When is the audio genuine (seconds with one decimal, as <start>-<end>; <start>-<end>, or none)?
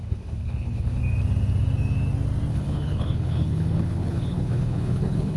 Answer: 1.0-2.5